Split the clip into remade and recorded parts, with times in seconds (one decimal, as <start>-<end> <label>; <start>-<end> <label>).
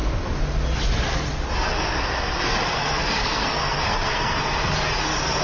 0.0-2.7 recorded; 2.7-4.4 remade; 4.4-5.4 recorded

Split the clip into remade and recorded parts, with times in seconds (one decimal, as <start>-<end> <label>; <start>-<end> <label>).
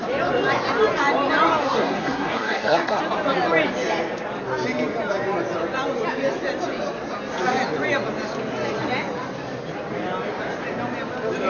0.0-1.6 recorded; 1.6-3.0 remade; 3.0-11.5 recorded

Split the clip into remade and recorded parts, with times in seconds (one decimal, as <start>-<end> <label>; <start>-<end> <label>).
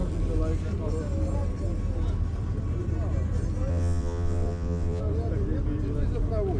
0.0-3.7 recorded; 3.7-5.0 remade; 5.0-6.6 recorded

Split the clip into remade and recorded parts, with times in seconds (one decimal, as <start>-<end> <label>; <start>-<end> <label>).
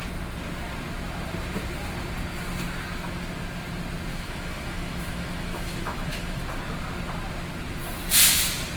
0.0-4.1 recorded; 4.1-6.4 remade; 6.4-8.8 recorded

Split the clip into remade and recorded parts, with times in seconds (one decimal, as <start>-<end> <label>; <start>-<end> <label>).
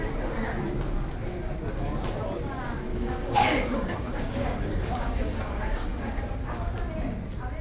0.0-2.9 recorded; 2.9-6.2 remade; 6.2-7.6 recorded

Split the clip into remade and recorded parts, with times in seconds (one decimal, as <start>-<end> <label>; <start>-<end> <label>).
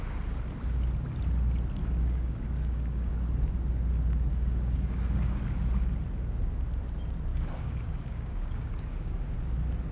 0.0-1.8 recorded; 1.8-3.1 remade; 3.1-4.3 recorded; 4.3-5.4 remade; 5.4-7.3 recorded; 7.3-9.2 remade; 9.2-9.9 recorded